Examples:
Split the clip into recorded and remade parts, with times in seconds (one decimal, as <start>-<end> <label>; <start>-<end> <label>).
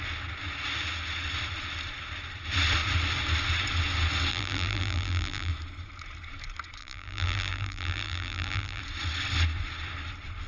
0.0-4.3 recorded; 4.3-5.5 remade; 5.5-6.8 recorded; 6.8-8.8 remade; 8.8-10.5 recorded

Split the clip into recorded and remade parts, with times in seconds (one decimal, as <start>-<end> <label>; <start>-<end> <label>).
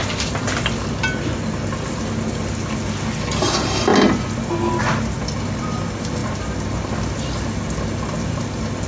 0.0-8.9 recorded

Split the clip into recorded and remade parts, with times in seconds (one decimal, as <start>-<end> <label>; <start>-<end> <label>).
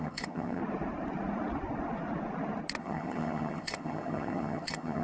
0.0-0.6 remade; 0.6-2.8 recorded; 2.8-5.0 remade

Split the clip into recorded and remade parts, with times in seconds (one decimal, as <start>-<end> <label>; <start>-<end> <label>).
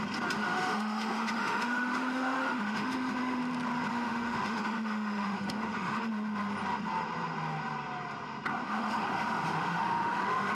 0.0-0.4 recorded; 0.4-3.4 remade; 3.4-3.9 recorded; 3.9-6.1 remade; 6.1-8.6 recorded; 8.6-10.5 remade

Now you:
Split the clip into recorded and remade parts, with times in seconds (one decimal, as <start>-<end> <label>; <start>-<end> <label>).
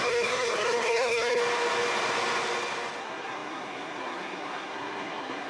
0.0-1.4 remade; 1.4-3.0 recorded; 3.0-5.5 remade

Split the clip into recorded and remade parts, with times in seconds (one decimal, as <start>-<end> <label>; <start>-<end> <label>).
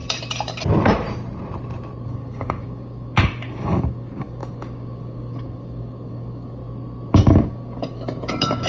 0.0-2.0 recorded; 2.0-6.6 remade; 6.6-7.1 recorded; 7.1-8.7 remade